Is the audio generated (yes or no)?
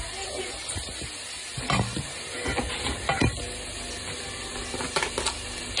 no